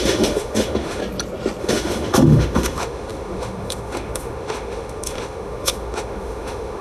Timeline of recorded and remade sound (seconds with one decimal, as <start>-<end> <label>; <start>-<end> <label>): 0.0-1.0 remade; 1.0-1.6 recorded; 1.6-6.8 remade